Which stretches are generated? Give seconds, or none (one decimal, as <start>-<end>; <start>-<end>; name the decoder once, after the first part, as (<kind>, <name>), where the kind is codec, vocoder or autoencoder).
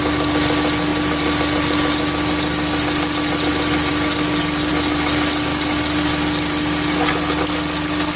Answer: none